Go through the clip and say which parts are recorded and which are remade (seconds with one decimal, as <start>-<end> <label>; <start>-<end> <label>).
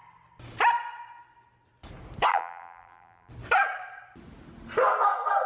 0.0-2.3 recorded; 2.3-3.3 remade; 3.3-5.5 recorded